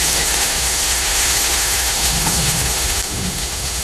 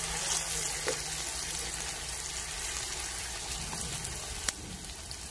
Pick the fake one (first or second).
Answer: first